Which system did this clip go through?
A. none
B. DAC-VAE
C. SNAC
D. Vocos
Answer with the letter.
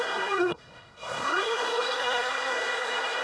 C